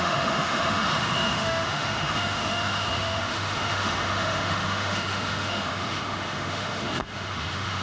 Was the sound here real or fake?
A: fake